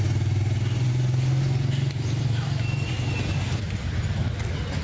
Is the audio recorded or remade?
recorded